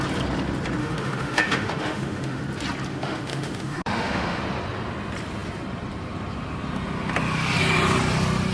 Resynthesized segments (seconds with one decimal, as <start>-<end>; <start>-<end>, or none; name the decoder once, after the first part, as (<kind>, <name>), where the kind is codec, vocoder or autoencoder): 0.8-2.4 (autoencoder, DAC-VAE); 2.9-4.4

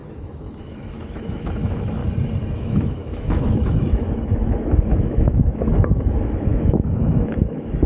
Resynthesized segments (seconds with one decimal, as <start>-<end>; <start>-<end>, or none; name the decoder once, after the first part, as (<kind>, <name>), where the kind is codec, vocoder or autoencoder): 0.0-2.0 (autoencoder, DAC-VAE); 2.6-7.9

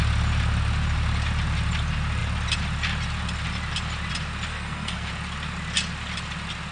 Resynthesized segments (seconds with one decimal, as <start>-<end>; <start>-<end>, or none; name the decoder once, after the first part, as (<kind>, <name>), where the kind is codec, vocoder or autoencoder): 4.5-5.1 (codec, SNAC)

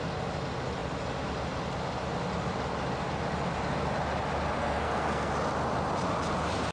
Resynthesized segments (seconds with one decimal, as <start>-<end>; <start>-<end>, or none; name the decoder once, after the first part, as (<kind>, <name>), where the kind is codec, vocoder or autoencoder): 4.6-5.3 (codec, SNAC)

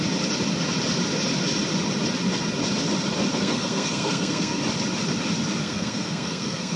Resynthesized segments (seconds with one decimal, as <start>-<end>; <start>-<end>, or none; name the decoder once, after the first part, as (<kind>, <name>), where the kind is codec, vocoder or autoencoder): 3.3-4.6 (codec, SNAC); 5.6-6.8

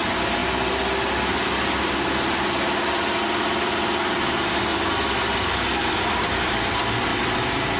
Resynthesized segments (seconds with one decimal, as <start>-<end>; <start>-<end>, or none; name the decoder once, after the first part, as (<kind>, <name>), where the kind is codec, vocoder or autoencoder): 0.0-0.4 (vocoder, BigVGAN v2); 3.2-4.7; 5.8-7.8